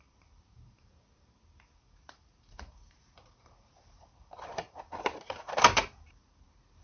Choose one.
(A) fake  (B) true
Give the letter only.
A